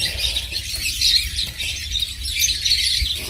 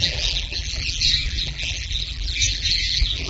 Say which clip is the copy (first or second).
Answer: second